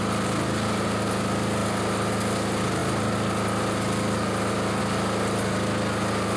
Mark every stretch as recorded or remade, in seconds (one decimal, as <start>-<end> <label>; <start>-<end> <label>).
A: 0.0-6.4 recorded